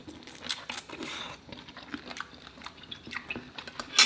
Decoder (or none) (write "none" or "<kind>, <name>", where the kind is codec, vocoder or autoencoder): none